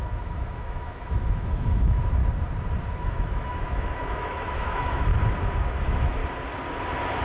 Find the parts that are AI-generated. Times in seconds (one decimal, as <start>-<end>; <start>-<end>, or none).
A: 0.0-2.2; 2.8-5.1; 5.8-6.2